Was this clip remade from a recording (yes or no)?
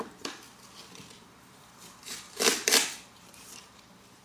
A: yes